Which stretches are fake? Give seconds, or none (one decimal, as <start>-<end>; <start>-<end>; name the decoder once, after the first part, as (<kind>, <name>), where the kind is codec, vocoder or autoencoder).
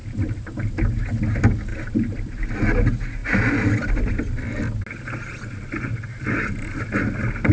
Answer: 0.0-0.8 (vocoder, BigVGAN v2); 1.7-2.3